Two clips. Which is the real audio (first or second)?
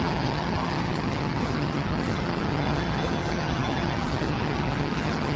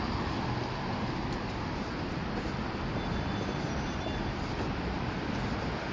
second